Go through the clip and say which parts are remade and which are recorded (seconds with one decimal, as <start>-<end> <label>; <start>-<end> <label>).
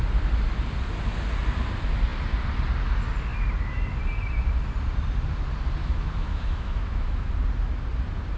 0.0-5.8 recorded; 5.8-7.3 remade; 7.3-8.4 recorded